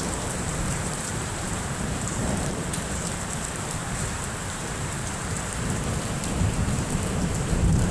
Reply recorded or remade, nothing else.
remade